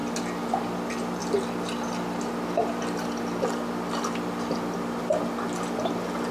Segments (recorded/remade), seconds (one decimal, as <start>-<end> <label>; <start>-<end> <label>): 0.0-6.3 recorded